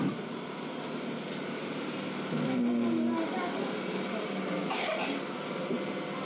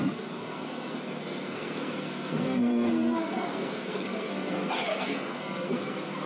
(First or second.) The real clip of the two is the first